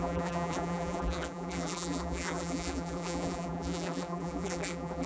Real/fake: fake